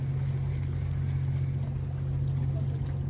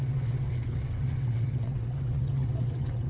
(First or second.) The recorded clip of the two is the first